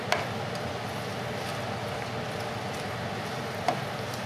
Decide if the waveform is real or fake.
real